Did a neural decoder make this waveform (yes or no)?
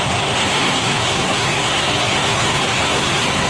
yes